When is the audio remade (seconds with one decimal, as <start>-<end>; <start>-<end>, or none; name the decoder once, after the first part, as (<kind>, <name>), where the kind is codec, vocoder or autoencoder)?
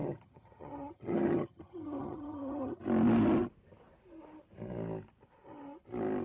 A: 0.0-2.8 (vocoder, HiFi-GAN)